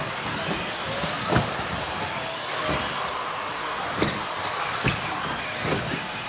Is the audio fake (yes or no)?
no